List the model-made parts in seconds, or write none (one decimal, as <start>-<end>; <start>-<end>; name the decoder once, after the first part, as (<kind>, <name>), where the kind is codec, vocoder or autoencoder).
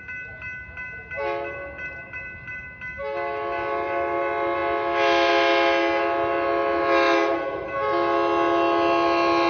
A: none